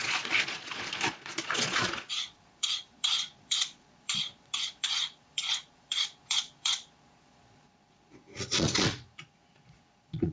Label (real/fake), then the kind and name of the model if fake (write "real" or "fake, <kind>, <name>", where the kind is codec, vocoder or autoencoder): fake, vocoder, Vocos